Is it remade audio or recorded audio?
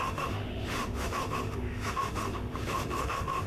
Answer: remade